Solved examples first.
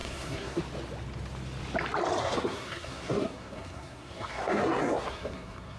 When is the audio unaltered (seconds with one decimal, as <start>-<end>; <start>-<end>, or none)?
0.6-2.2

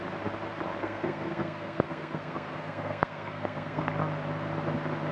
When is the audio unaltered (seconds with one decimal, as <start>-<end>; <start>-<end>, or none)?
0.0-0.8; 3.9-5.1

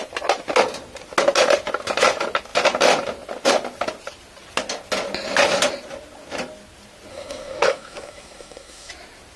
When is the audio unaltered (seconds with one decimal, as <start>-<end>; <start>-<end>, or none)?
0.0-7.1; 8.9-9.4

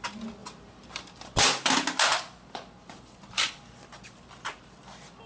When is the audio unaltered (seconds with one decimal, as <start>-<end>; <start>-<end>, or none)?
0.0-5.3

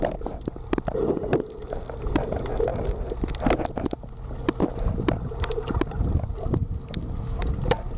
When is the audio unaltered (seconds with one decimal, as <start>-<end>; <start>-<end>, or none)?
0.0-8.0

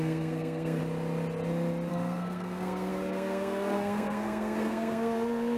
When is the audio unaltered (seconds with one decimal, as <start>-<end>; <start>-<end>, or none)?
0.8-1.9